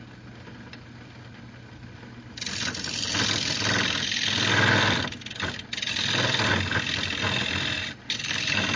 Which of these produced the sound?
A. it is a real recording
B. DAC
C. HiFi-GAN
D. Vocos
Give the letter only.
A